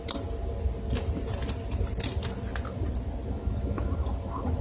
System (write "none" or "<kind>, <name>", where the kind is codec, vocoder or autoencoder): none